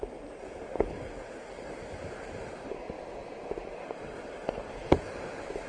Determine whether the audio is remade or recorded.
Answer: recorded